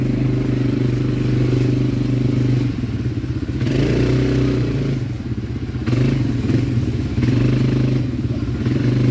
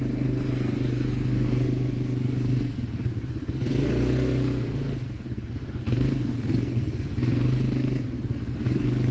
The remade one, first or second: second